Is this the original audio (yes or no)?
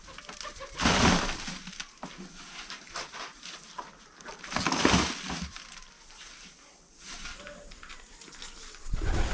yes